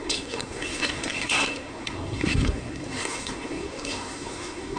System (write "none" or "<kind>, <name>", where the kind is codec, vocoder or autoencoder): codec, SNAC